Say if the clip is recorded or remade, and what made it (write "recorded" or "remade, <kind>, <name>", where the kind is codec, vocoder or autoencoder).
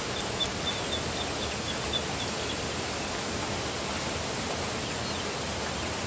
recorded